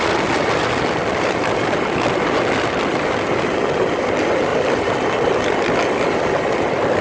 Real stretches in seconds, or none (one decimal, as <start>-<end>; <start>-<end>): 0.0-7.0